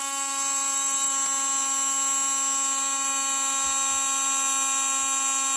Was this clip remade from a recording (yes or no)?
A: no